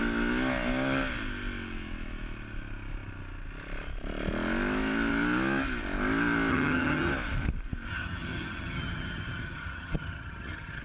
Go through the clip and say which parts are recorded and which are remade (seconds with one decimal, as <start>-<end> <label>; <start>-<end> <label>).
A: 0.0-6.5 recorded; 6.5-7.1 remade; 7.1-7.9 recorded; 7.9-10.8 remade